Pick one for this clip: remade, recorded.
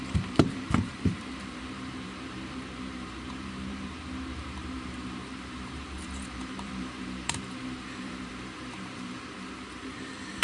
remade